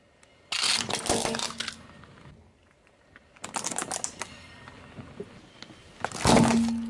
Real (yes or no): yes